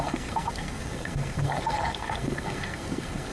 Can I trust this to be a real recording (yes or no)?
no